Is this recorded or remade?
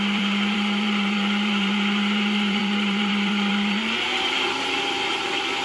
remade